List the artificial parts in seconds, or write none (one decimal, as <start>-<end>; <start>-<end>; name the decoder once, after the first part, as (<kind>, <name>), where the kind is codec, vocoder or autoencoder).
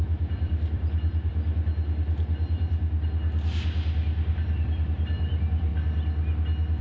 0.0-1.3 (vocoder, BigVGAN v2); 4.3-5.7